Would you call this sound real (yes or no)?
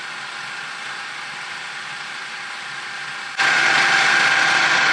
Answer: no